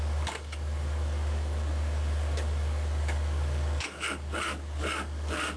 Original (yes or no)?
no